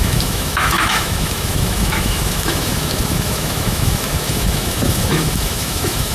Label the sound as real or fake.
fake